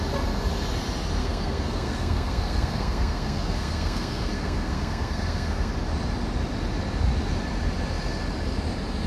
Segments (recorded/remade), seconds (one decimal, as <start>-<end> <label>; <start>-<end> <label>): 0.0-1.2 recorded; 1.2-5.7 remade; 5.7-9.1 recorded

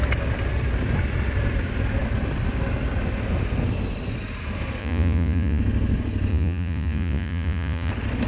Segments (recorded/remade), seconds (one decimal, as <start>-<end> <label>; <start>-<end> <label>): 0.0-4.8 recorded; 4.8-5.6 remade; 5.6-6.3 recorded; 6.3-7.9 remade; 7.9-8.3 recorded

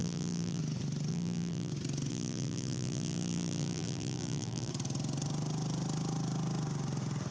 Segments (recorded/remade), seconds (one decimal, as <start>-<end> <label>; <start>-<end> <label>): 0.0-0.6 remade; 0.6-1.1 recorded; 1.1-1.7 remade; 1.7-2.1 recorded; 2.1-4.7 remade; 4.7-7.3 recorded

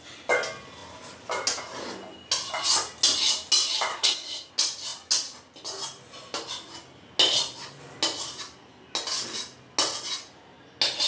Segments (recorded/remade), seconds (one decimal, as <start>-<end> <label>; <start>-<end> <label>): 0.0-3.9 recorded; 3.9-4.5 remade; 4.5-11.1 recorded